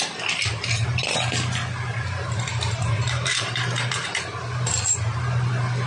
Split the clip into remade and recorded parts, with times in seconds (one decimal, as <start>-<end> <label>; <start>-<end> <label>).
0.0-2.5 recorded; 2.5-4.2 remade; 4.2-5.9 recorded